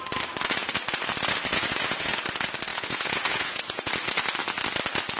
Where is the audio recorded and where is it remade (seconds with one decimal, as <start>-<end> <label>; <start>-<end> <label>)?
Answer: 0.0-1.5 recorded; 1.5-2.1 remade; 2.1-2.7 recorded; 2.7-3.9 remade; 3.9-5.2 recorded